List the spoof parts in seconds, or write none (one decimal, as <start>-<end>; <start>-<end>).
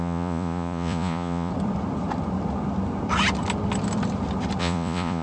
0.0-1.5; 4.6-5.2